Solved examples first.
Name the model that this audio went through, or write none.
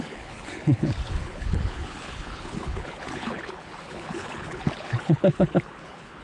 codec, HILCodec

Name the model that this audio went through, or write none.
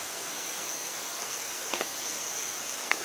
codec, SNAC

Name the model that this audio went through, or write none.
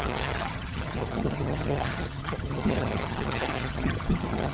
vocoder, HiFi-GAN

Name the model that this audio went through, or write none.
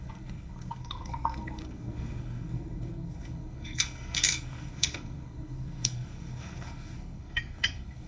codec, SNAC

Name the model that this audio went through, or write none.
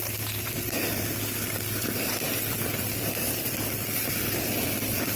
vocoder, BigVGAN v2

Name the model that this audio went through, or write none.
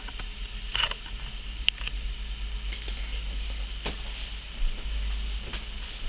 none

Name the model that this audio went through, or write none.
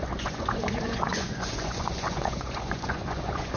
vocoder, Vocos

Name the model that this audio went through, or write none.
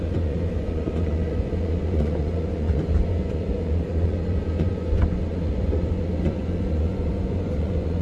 vocoder, Vocos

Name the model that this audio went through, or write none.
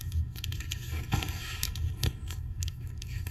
codec, SNAC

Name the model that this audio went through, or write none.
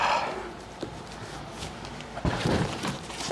vocoder, BigVGAN v2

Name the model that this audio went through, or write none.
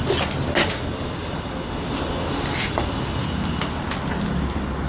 none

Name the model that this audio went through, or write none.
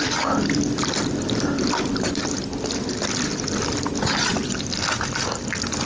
none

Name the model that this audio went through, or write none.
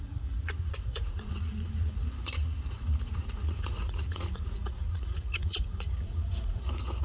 vocoder, Vocos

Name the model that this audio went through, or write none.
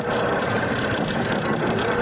none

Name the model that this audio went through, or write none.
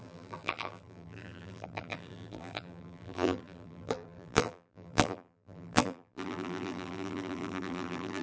vocoder, BigVGAN v2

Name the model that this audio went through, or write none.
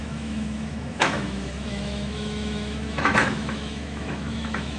autoencoder, DAC-VAE